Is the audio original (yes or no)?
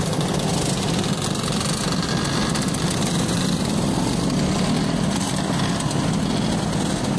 yes